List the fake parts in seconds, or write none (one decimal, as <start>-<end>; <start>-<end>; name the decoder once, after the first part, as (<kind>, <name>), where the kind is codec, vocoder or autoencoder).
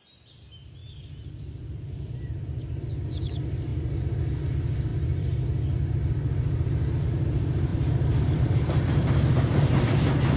0.8-2.4 (vocoder, BigVGAN v2); 4.9-5.4; 7.7-10.4